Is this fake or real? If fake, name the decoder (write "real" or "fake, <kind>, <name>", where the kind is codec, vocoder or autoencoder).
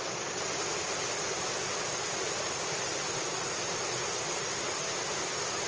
real